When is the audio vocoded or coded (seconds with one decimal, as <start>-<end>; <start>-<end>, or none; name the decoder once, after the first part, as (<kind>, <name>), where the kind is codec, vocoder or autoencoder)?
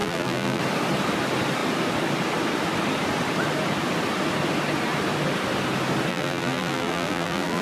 0.0-0.6 (vocoder, BigVGAN v2); 6.1-7.6